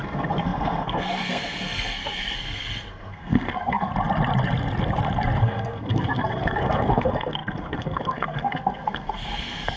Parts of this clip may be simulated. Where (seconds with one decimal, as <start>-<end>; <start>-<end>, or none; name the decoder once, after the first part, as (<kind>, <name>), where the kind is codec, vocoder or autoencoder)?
0.0-3.9 (codec, SNAC); 5.4-9.8